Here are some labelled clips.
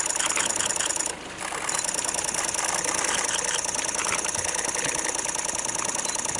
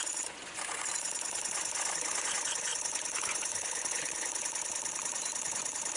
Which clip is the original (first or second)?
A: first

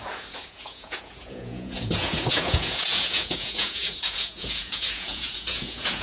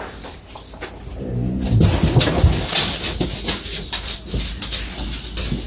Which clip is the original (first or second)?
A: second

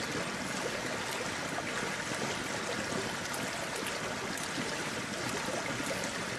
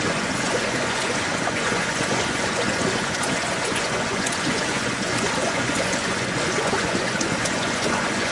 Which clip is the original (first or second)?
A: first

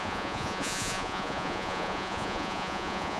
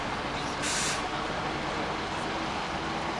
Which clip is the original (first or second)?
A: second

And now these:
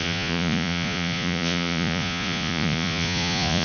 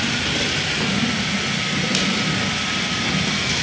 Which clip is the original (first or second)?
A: second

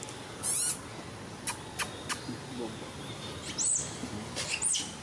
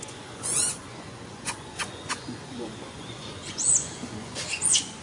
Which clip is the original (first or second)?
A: first